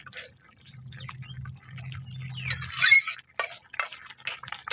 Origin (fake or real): real